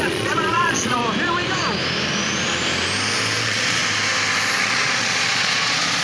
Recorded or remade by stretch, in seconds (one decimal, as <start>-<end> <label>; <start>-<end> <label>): 0.0-1.0 remade; 1.0-3.4 recorded; 3.4-3.8 remade; 3.8-4.6 recorded; 4.6-6.0 remade